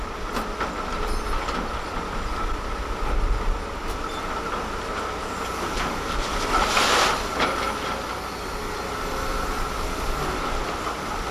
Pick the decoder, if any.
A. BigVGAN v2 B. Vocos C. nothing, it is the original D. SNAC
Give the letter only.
C